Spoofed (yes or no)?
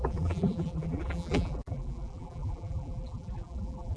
yes